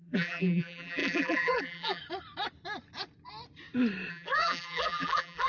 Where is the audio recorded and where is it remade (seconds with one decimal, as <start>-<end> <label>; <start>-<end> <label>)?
0.0-2.0 remade; 2.0-4.1 recorded; 4.1-5.5 remade